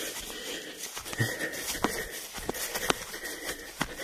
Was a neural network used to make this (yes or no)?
yes